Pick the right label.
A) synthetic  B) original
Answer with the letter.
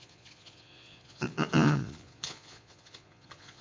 A